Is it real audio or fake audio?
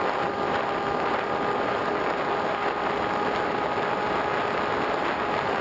real